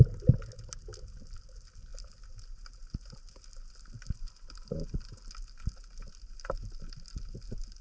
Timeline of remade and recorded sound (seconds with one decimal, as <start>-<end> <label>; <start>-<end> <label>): 0.0-7.8 recorded